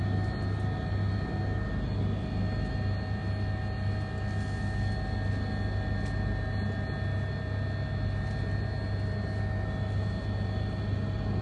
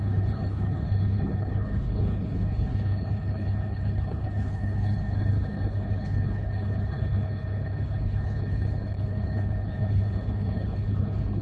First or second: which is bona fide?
first